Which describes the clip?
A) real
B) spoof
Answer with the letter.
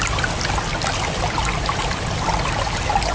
A